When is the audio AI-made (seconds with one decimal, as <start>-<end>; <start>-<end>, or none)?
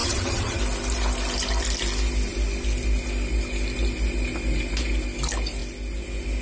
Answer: 0.0-0.6